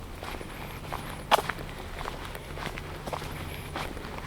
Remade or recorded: remade